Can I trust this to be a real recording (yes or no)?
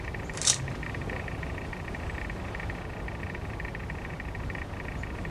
yes